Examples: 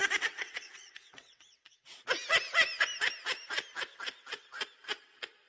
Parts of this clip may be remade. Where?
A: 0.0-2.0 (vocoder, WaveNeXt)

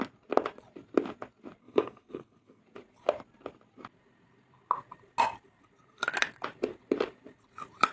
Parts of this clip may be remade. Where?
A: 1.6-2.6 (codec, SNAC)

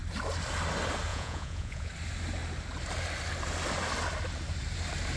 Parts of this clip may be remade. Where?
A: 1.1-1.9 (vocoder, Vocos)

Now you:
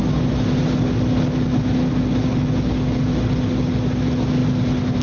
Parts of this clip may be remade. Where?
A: none

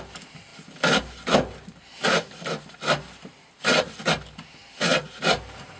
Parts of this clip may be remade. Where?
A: none

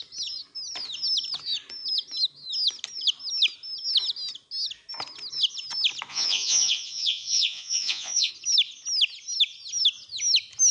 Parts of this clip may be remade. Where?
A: 6.1-8.3 (vocoder, Vocos)